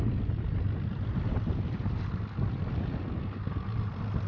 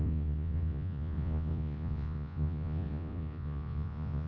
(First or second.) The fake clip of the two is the second